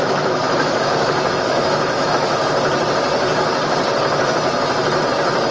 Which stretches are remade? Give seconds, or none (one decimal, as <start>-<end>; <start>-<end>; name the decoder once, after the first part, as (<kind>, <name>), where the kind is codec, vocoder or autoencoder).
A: 0.0-0.4 (autoencoder, DAC-VAE); 1.3-2.4